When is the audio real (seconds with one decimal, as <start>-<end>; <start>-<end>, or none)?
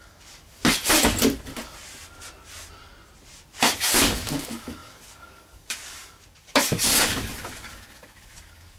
0.6-3.6